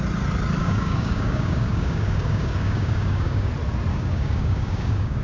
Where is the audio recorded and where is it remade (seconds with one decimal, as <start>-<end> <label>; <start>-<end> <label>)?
0.0-0.6 recorded; 0.6-3.5 remade; 3.5-3.9 recorded; 3.9-5.2 remade